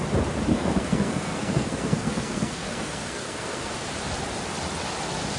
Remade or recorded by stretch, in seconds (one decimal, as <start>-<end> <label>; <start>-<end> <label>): 0.0-0.5 recorded; 0.5-3.7 remade; 3.7-5.4 recorded